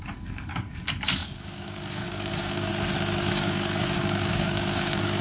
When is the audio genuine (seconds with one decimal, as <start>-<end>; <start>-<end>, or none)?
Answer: 2.7-3.3